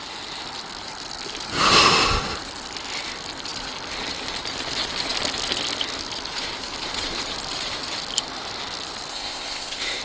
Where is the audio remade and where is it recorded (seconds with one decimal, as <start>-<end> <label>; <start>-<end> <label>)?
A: 0.0-9.1 recorded; 9.1-10.0 remade